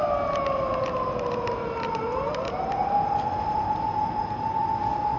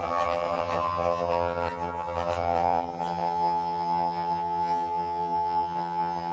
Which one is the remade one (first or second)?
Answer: second